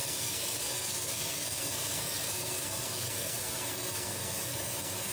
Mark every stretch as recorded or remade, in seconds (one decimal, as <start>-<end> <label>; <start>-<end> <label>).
0.0-5.1 remade